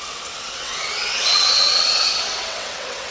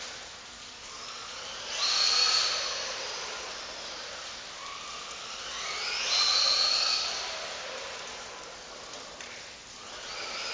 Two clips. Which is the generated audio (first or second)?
first